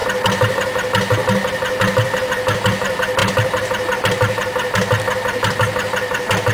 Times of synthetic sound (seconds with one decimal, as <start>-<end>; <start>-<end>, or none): none